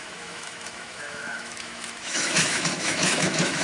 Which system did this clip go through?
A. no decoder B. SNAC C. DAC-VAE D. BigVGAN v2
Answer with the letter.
C